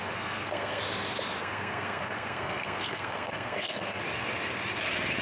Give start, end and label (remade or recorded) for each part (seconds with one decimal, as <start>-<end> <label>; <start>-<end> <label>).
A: 0.0-0.8 remade; 0.8-1.4 recorded; 1.4-4.0 remade; 4.0-5.2 recorded